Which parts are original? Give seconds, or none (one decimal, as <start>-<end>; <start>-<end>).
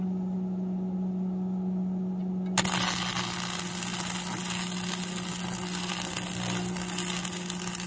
0.0-7.9